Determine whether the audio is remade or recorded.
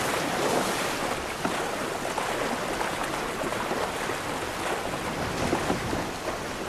recorded